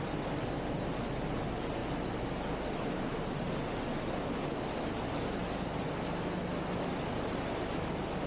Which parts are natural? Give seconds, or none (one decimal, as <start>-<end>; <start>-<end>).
0.0-8.3